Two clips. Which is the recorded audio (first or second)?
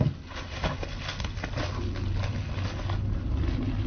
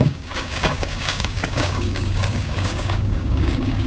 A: first